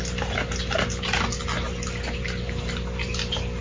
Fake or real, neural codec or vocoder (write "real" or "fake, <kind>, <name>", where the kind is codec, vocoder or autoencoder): real